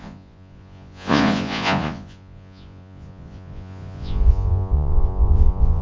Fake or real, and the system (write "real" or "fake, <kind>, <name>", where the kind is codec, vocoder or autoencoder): fake, vocoder, Vocos